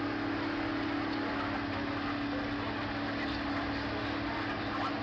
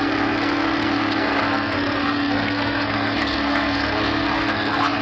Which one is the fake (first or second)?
second